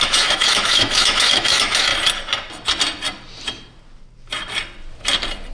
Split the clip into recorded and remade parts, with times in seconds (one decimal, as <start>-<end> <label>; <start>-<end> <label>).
0.0-1.9 remade; 1.9-5.5 recorded